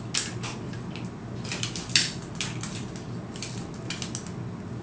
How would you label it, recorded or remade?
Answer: recorded